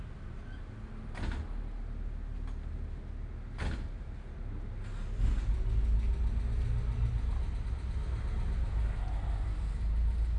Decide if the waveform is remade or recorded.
recorded